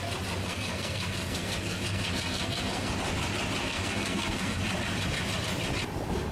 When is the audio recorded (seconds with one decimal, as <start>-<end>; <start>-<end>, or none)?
0.0-0.4; 2.9-3.6; 4.6-6.3